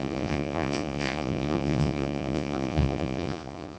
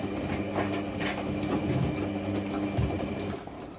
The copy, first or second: first